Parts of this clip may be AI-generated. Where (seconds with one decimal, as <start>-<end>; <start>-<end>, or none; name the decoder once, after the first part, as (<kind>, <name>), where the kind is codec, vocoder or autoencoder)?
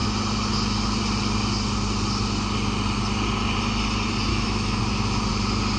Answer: 4.3-4.8 (autoencoder, DAC-VAE)